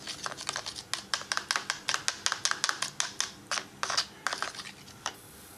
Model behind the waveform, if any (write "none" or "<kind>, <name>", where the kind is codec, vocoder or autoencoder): none